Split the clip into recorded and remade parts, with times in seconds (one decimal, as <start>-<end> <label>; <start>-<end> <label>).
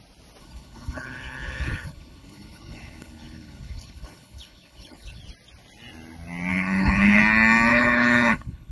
0.0-0.4 recorded; 0.4-5.2 remade; 5.2-6.5 recorded; 6.5-7.2 remade; 7.2-7.7 recorded; 7.7-8.7 remade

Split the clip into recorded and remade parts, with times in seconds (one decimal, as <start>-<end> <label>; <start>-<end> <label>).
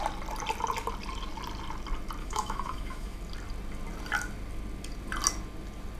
0.0-2.2 recorded; 2.2-3.2 remade; 3.2-6.0 recorded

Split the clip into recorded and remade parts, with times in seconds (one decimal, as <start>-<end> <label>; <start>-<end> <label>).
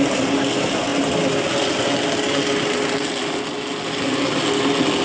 0.0-5.0 recorded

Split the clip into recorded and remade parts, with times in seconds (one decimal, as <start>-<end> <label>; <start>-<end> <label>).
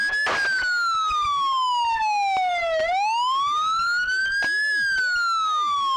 0.0-6.0 recorded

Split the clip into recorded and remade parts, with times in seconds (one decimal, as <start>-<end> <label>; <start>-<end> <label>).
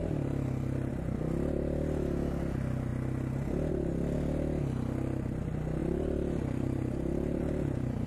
0.0-0.9 remade; 0.9-5.8 recorded; 5.8-8.1 remade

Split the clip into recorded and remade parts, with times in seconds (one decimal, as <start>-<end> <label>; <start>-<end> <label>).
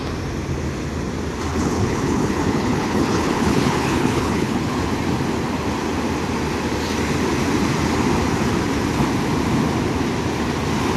0.0-1.5 recorded; 1.5-4.8 remade; 4.8-11.0 recorded